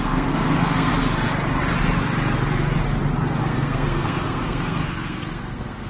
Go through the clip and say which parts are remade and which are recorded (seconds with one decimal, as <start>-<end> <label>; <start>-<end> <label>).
0.0-0.9 remade; 0.9-3.4 recorded; 3.4-5.9 remade

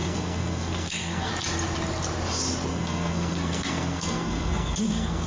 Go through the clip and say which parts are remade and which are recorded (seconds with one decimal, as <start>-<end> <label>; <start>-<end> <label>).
0.0-1.3 remade; 1.3-2.7 recorded; 2.7-5.3 remade

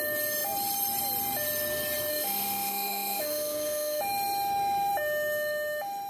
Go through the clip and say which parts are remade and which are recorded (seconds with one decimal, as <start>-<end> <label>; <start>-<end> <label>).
0.0-2.1 recorded; 2.1-4.0 remade; 4.0-6.1 recorded

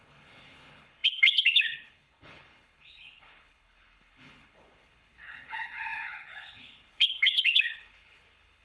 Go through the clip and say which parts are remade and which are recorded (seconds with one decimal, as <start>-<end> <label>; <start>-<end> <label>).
0.0-8.6 remade

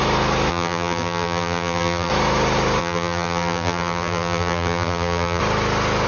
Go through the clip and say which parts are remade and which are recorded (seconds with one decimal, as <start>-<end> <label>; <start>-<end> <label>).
0.0-0.5 recorded; 0.5-2.1 remade; 2.1-2.8 recorded; 2.8-5.4 remade; 5.4-6.1 recorded